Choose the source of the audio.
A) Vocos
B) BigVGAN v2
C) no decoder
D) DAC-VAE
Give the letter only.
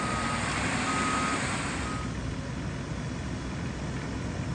C